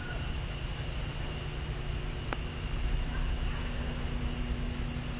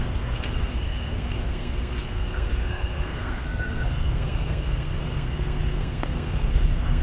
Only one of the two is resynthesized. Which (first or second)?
second